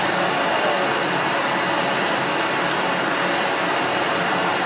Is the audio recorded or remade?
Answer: recorded